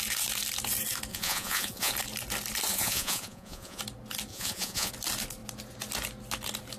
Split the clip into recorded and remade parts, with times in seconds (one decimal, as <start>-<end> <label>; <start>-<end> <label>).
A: 0.0-1.1 recorded; 1.1-1.9 remade; 1.9-2.7 recorded; 2.7-3.8 remade; 3.8-4.3 recorded; 4.3-4.9 remade; 4.9-6.8 recorded

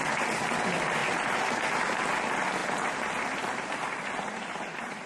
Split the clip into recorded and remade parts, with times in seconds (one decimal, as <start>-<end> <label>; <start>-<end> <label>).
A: 0.0-2.6 recorded; 2.6-5.1 remade

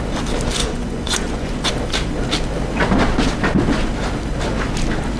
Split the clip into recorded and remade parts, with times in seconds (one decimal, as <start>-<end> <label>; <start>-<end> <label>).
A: 0.0-0.6 recorded; 0.6-1.7 remade; 1.7-5.2 recorded

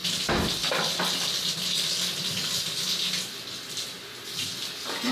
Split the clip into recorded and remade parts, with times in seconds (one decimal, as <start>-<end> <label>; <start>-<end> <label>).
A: 0.0-5.1 recorded

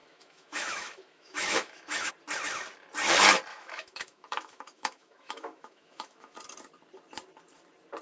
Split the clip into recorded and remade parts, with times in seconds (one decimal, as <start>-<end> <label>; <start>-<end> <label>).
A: 0.0-2.1 remade; 2.1-3.5 recorded; 3.5-6.3 remade; 6.3-8.0 recorded

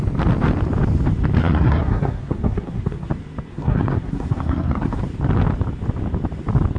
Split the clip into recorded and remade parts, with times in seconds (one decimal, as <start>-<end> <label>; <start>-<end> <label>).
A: 0.0-1.4 recorded; 1.4-3.1 remade; 3.1-3.5 recorded; 3.5-5.0 remade; 5.0-6.8 recorded